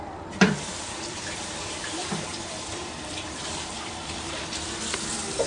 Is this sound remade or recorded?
remade